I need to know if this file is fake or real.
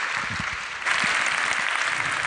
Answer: real